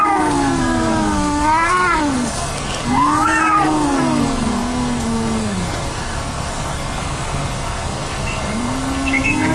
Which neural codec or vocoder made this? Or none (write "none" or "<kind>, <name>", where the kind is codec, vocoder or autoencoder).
codec, SNAC